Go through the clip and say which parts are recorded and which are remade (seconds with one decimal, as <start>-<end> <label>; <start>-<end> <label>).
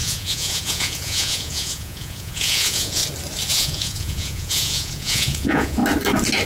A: 0.0-3.0 remade; 3.0-3.5 recorded; 3.5-5.8 remade; 5.8-6.5 recorded